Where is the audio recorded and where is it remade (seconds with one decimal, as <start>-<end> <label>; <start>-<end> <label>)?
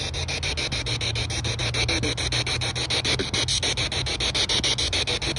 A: 0.0-5.4 recorded